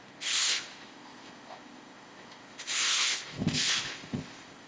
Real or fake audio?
fake